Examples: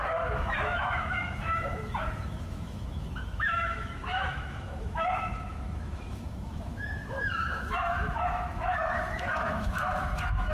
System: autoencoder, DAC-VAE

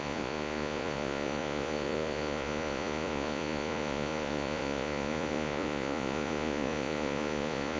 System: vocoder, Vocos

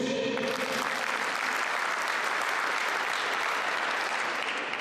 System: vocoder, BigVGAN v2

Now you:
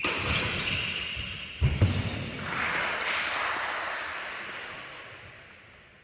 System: none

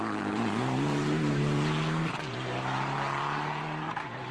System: vocoder, BigVGAN v2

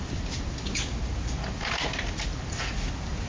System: none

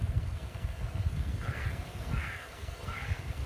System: codec, SNAC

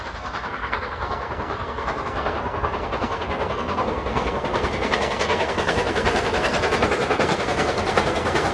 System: codec, SNAC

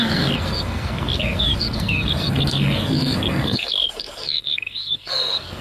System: codec, SNAC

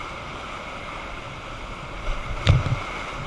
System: none